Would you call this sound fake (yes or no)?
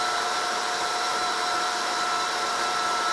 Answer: yes